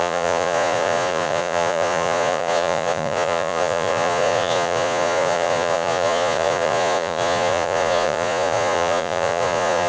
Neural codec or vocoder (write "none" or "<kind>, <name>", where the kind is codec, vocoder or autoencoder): vocoder, Vocos